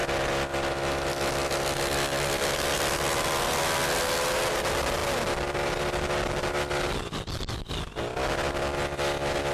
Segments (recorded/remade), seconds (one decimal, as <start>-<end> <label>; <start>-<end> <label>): 0.0-9.5 recorded